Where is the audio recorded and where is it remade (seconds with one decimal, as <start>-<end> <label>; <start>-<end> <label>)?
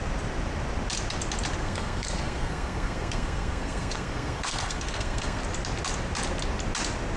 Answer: 0.0-1.6 recorded; 1.6-5.4 remade; 5.4-7.2 recorded